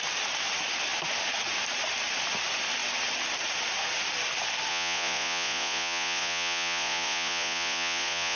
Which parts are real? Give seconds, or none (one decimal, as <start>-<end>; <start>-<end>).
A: 0.0-4.7